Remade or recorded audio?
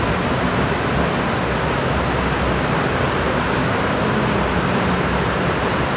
recorded